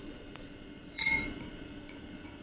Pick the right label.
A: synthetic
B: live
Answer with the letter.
A